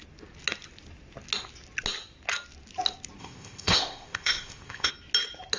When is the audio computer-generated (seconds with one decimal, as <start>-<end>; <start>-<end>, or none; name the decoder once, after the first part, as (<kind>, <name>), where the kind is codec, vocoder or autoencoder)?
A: 3.2-4.9 (codec, ZipCodec)